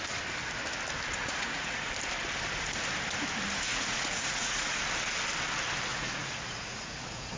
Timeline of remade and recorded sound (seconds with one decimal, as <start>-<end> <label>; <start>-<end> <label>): 0.0-1.2 recorded; 1.2-1.9 remade; 1.9-3.7 recorded; 3.7-4.8 remade; 4.8-5.9 recorded; 5.9-7.4 remade